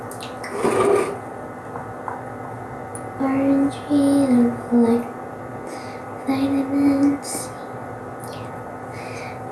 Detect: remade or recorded recorded